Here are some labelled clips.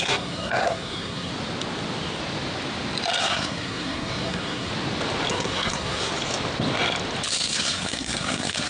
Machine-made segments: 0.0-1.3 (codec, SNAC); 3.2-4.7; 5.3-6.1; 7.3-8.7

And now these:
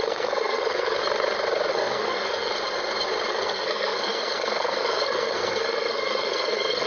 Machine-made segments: 0.0-1.0 (codec, SNAC); 1.7-2.5; 3.3-6.9

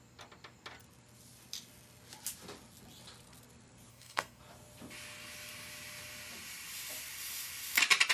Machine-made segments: 3.9-4.4 (codec, SNAC)

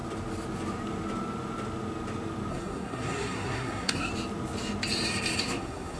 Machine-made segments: 2.5-4.1 (codec, SNAC); 5.4-6.0

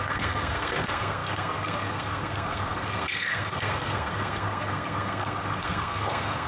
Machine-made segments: 0.0-6.5 (codec, SNAC)

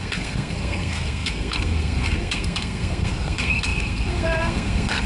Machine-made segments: 0.0-5.1 (codec, SNAC)

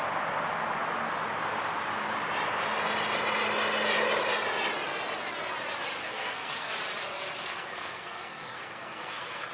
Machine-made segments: 6.0-6.7 (codec, SNAC); 7.4-9.5